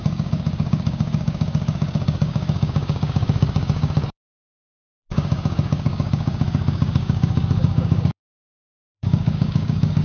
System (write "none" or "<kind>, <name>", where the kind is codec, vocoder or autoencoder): codec, DAC